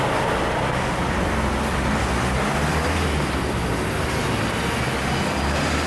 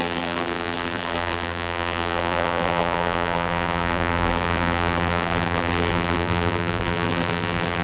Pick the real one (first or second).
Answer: first